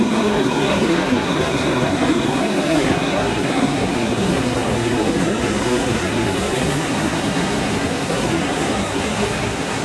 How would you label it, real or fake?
fake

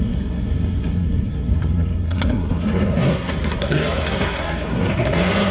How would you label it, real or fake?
fake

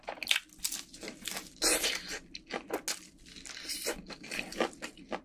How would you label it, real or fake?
real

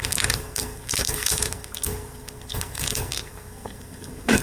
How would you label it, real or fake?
fake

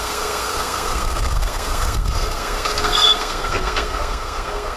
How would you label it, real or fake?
fake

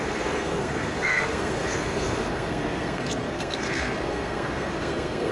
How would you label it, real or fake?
fake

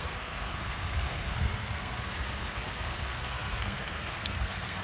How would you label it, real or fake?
fake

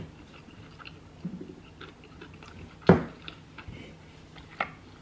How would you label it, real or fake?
real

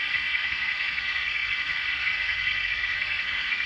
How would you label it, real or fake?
fake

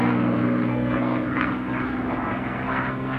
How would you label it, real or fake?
fake